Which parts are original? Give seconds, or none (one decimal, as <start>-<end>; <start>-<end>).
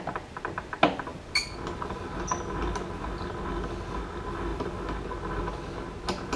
0.0-6.4